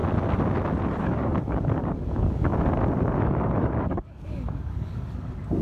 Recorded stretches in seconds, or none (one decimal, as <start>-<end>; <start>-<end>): 0.0-1.0; 2.5-3.2